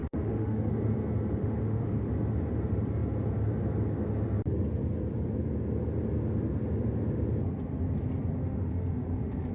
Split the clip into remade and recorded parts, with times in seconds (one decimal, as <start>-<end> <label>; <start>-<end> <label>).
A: 0.0-0.7 remade; 0.7-1.4 recorded; 1.4-2.1 remade; 2.1-8.4 recorded; 8.4-9.5 remade